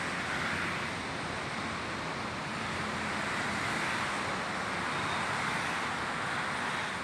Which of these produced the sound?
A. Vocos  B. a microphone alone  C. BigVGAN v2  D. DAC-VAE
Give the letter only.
B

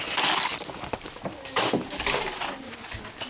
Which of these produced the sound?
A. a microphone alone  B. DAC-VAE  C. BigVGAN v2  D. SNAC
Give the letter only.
A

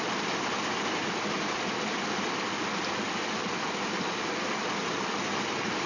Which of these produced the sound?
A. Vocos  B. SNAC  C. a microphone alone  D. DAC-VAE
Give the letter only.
C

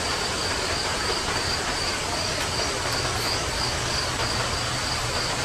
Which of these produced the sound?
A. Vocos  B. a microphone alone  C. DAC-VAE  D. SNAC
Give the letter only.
B